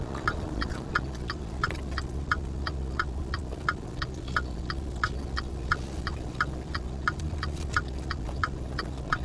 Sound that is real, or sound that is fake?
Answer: fake